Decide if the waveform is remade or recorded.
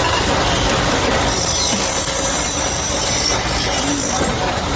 recorded